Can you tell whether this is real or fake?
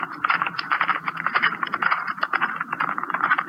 fake